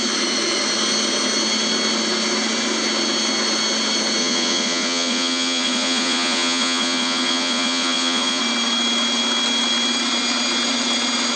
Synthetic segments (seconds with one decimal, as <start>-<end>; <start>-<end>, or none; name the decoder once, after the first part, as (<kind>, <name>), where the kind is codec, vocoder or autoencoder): 4.2-8.4 (vocoder, Vocos)